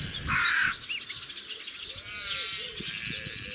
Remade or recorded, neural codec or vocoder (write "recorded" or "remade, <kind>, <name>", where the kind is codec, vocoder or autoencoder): recorded